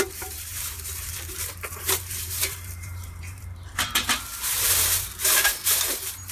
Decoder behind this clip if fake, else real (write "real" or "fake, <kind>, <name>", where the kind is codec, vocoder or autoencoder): fake, vocoder, BigVGAN v2